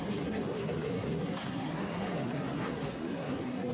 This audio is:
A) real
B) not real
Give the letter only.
B